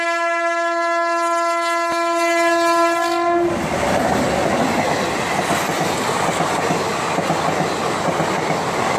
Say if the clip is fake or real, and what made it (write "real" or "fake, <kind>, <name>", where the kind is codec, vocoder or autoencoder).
real